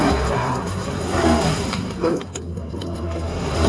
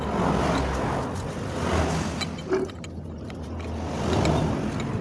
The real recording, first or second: second